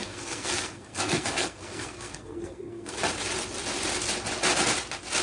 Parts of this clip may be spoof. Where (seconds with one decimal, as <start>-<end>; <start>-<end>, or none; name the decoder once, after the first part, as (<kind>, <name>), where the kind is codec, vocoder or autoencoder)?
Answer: 0.0-3.0 (codec, SNAC)